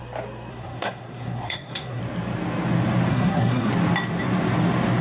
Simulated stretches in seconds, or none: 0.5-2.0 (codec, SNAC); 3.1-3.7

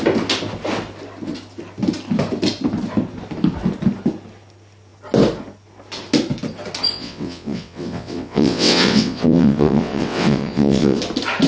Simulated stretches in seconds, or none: 6.9-11.0 (vocoder, WaveNeXt)

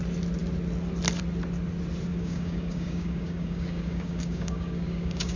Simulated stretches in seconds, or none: 2.1-5.4 (codec, DAC)